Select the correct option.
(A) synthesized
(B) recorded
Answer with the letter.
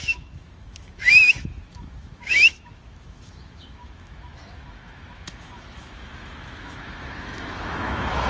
A